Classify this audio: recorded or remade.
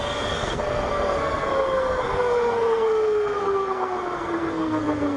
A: remade